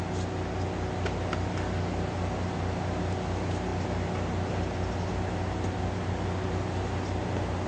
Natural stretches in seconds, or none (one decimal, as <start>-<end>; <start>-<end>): 0.0-7.7